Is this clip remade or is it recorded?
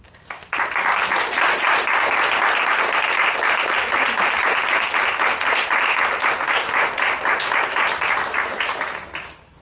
recorded